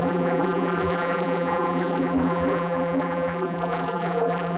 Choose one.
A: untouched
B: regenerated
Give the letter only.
B